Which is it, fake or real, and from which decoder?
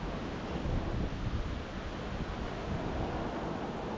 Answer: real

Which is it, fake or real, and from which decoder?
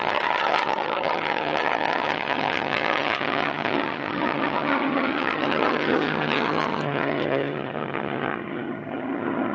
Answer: fake, vocoder, HiFi-GAN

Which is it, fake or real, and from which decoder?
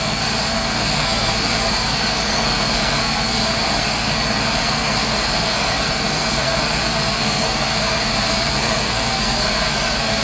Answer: fake, codec, SNAC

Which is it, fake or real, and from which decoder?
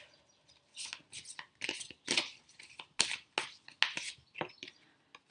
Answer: real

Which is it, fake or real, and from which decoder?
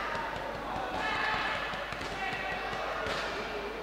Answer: real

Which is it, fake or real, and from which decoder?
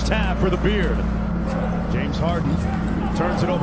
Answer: real